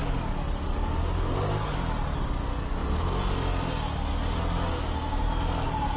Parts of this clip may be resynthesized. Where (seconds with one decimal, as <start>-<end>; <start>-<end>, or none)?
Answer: none